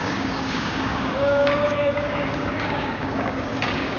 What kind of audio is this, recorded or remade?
remade